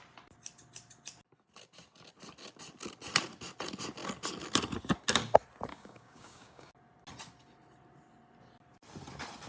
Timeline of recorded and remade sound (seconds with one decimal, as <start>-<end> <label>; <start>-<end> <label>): 0.0-5.7 recorded; 5.7-6.7 remade; 6.7-9.5 recorded